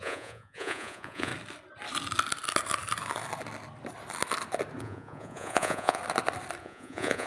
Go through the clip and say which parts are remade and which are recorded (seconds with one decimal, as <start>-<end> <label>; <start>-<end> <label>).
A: 0.0-1.3 remade; 1.3-4.8 recorded; 4.8-6.0 remade; 6.0-6.6 recorded; 6.6-7.3 remade